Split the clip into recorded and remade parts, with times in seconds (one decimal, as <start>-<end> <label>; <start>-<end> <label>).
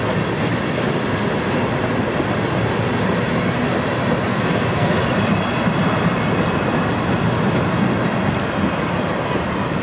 0.0-4.3 recorded; 4.3-4.9 remade; 4.9-9.8 recorded